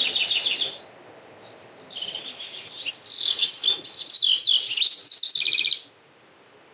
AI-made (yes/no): no